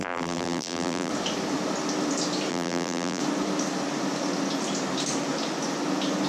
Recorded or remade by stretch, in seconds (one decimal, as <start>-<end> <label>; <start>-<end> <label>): 0.0-1.1 remade; 1.1-2.5 recorded; 2.5-3.2 remade; 3.2-6.3 recorded